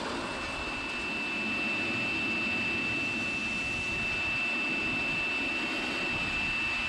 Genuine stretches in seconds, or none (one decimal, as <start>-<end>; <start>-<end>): 0.0-6.9